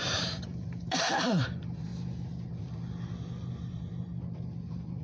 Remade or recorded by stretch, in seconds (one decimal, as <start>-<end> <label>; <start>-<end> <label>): 0.0-1.9 remade; 1.9-5.0 recorded